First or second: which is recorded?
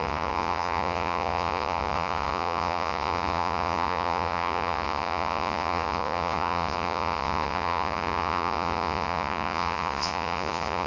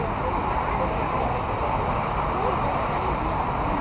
second